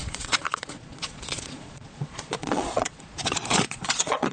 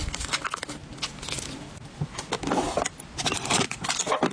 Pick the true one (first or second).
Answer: second